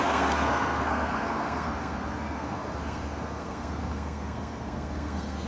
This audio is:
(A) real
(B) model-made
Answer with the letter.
B